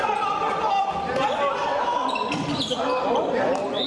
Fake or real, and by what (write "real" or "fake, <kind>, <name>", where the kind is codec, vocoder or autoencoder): fake, vocoder, BigVGAN v2